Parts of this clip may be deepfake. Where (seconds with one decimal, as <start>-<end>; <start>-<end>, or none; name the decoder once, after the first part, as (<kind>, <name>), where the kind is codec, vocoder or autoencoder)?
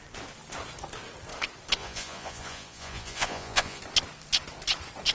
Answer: 1.8-3.8 (vocoder, Vocos)